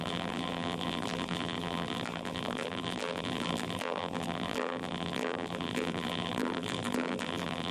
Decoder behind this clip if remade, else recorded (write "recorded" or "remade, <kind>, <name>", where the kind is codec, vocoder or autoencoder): remade, vocoder, BigVGAN v2